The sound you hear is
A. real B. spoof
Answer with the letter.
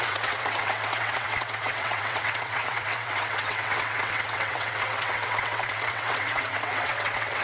B